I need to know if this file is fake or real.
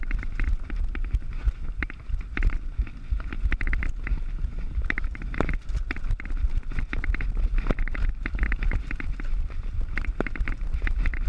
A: fake